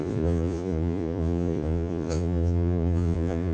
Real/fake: fake